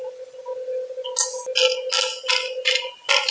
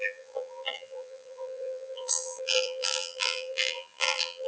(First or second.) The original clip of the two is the first